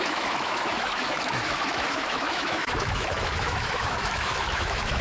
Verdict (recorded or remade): remade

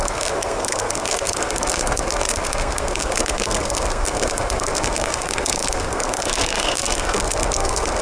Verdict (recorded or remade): remade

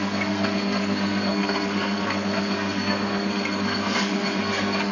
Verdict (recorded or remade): remade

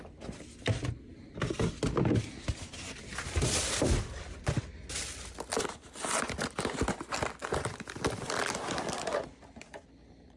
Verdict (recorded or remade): recorded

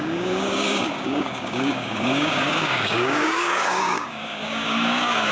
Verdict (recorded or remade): remade